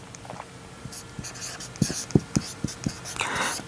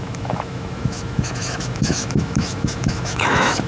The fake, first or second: second